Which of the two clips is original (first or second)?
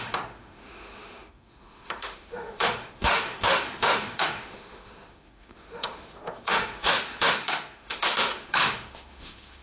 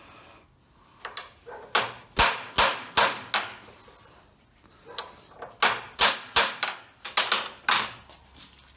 second